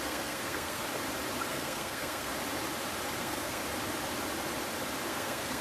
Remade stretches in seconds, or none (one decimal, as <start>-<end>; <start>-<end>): 0.0-0.8; 1.5-2.3; 3.2-3.6; 5.1-5.6